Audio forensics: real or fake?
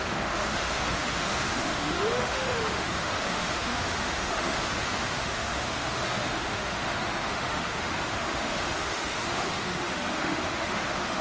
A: fake